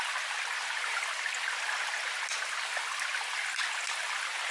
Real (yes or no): yes